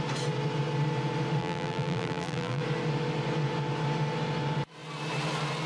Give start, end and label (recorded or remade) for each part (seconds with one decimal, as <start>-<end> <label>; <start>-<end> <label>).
0.0-1.4 recorded; 1.4-2.6 remade; 2.6-5.7 recorded

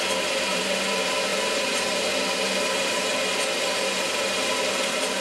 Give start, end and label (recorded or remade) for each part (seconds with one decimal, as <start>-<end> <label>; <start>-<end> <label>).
0.0-5.2 remade

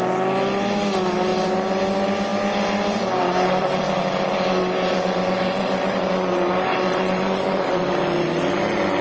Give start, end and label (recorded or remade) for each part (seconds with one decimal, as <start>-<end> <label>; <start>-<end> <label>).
0.0-3.6 recorded; 3.6-7.8 remade; 7.8-9.0 recorded